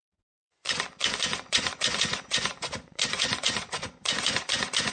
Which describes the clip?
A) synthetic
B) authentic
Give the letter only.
A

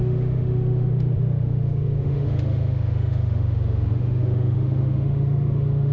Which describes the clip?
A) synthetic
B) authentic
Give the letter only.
A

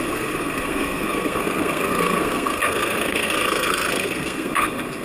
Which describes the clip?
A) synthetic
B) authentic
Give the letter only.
A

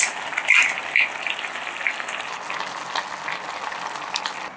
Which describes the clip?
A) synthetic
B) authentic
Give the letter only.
B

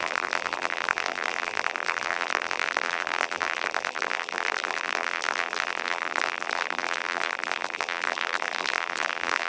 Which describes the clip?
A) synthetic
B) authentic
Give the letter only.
A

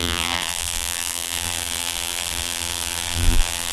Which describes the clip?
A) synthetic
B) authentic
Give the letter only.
A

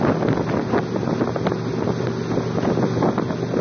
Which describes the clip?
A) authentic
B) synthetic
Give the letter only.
A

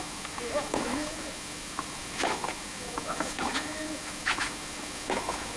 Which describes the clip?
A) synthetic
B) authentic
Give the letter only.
A